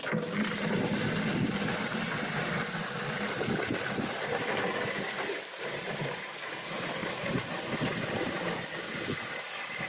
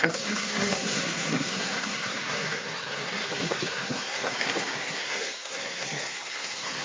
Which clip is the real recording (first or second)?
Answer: first